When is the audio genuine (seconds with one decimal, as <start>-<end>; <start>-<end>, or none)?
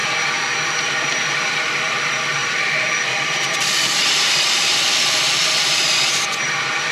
0.0-0.8